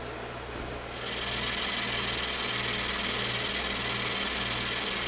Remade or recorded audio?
recorded